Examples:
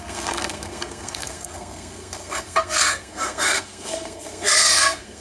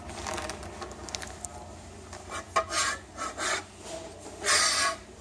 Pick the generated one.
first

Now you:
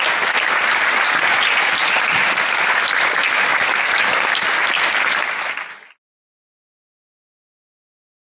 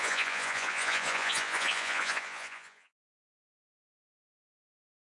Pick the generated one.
second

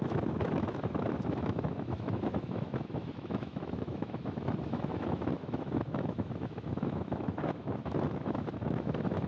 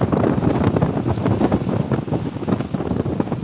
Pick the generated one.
first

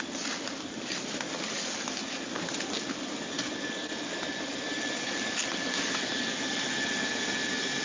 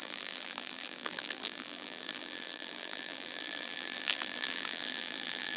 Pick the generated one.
second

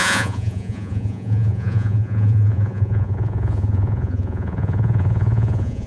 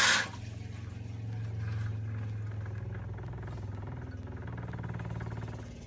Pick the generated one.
first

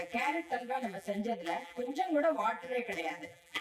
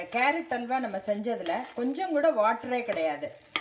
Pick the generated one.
first